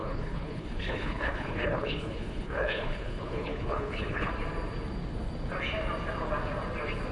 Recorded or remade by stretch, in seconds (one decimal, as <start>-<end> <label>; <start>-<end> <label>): 0.0-4.3 remade; 4.3-7.1 recorded